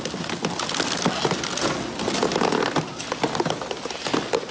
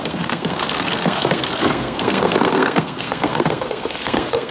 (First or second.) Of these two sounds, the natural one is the first